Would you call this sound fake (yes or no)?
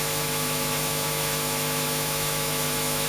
yes